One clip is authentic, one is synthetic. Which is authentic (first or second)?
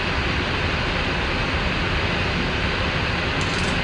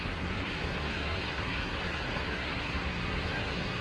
first